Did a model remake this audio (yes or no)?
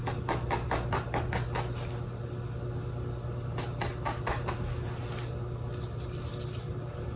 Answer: no